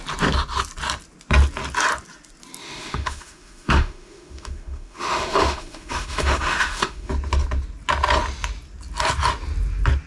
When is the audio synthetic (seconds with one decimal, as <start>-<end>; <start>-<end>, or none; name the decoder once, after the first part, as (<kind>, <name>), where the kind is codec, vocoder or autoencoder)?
2.6-7.1 (autoencoder, DAC-VAE)